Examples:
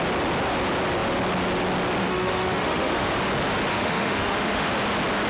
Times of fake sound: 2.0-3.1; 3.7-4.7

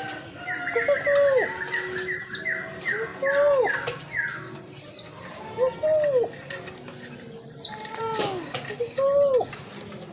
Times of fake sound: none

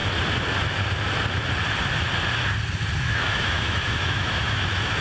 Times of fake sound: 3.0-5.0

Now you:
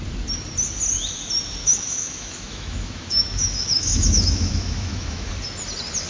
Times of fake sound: 1.6-5.3